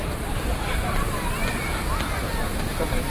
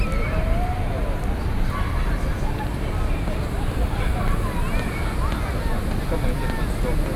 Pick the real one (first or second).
second